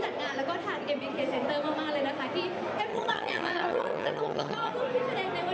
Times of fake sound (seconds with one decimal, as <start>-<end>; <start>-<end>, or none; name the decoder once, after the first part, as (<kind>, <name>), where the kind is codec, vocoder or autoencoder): 2.9-4.7 (vocoder, HiFi-GAN)